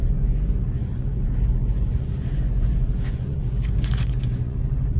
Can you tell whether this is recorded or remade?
remade